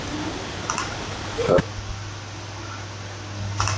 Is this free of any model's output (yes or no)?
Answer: yes